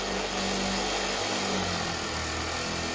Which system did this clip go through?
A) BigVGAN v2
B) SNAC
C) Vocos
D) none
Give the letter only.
D